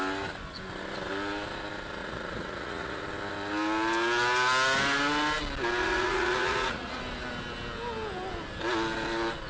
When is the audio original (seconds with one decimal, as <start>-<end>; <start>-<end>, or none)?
0.0-2.0; 3.0-5.8; 7.0-9.5